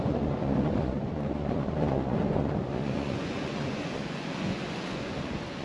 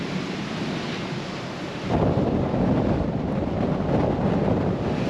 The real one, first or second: second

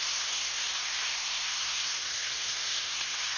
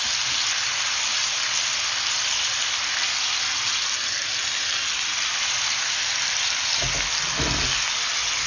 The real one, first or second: second